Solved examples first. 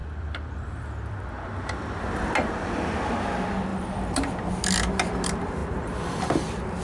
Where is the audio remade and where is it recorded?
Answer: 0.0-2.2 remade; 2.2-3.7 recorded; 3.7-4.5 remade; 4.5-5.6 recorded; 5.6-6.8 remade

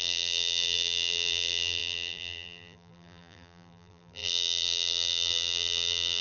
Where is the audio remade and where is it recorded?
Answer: 0.0-6.2 remade

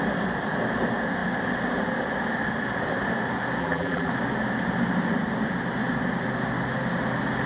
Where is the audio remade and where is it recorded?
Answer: 0.0-3.6 recorded; 3.6-4.1 remade; 4.1-7.5 recorded

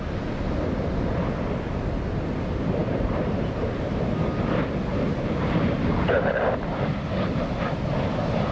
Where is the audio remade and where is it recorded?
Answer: 0.0-2.8 recorded; 2.8-4.2 remade; 4.2-4.9 recorded; 4.9-6.3 remade; 6.3-8.5 recorded

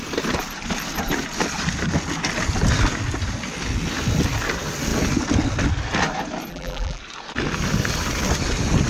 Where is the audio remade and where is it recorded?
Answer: 0.0-6.5 recorded; 6.5-7.0 remade; 7.0-8.9 recorded

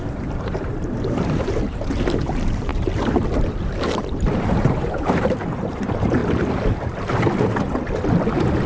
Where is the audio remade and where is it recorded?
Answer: 0.0-6.2 remade; 6.2-8.7 recorded